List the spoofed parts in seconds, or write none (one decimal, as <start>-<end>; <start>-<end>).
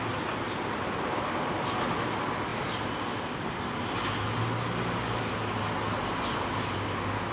none